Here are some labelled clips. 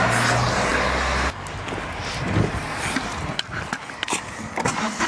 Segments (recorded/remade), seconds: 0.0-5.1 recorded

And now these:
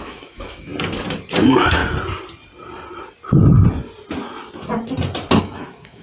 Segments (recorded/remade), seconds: 0.0-0.7 remade; 0.7-1.4 recorded; 1.4-1.8 remade; 1.8-5.4 recorded; 5.4-6.0 remade

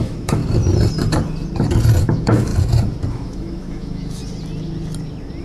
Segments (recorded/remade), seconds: 0.0-0.4 remade; 0.4-2.0 recorded; 2.0-2.5 remade; 2.5-3.1 recorded; 3.1-4.2 remade; 4.2-5.4 recorded

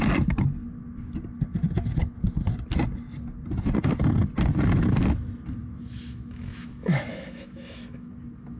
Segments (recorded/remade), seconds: 0.0-5.6 recorded; 5.6-8.1 remade; 8.1-8.6 recorded

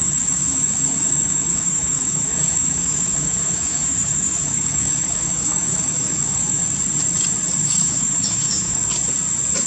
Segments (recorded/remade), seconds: 0.0-6.6 remade; 6.6-7.6 recorded; 7.6-8.8 remade; 8.8-9.7 recorded